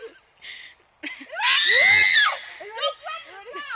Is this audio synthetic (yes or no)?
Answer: no